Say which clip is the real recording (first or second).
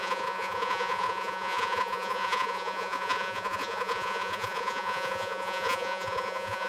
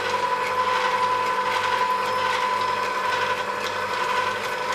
second